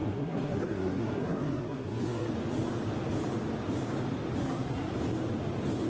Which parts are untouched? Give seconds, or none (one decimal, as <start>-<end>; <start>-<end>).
2.3-4.4; 4.9-5.9